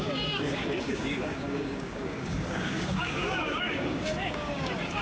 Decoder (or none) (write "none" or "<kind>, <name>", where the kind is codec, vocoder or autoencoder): codec, DAC